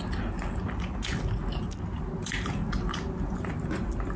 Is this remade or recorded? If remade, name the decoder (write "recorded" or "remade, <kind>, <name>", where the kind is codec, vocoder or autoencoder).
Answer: recorded